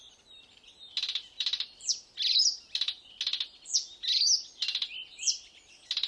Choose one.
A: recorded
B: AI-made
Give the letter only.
A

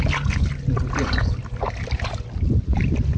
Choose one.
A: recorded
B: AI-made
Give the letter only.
A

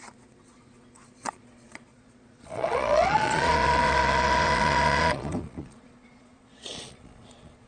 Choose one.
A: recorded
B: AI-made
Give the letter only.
B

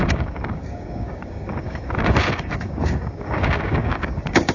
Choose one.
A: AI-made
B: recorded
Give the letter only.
A